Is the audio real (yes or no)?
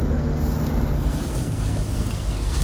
no